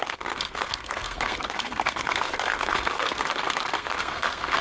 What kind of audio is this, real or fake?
fake